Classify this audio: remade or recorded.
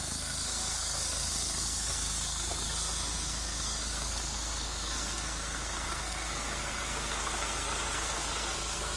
remade